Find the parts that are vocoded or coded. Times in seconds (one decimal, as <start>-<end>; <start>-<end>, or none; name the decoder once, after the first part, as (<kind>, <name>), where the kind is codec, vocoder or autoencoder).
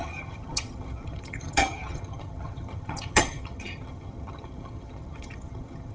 0.0-5.9 (vocoder, HiFi-GAN)